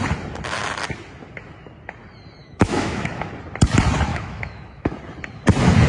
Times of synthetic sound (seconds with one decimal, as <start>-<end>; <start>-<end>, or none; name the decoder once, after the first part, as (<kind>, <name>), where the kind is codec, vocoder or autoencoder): 2.4-3.3 (autoencoder, DAC-VAE); 4.1-4.9